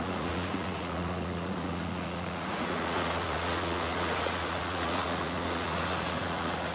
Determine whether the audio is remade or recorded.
remade